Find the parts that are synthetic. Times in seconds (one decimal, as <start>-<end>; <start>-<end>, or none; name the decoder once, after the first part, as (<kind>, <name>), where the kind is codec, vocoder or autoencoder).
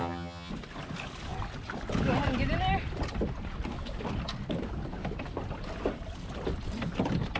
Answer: 0.0-0.5 (vocoder, HiFi-GAN)